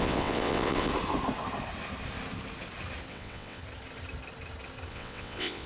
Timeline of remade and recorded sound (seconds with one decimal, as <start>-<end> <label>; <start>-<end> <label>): 0.0-0.9 remade; 0.9-3.1 recorded; 3.1-3.6 remade; 3.6-4.9 recorded; 4.9-5.7 remade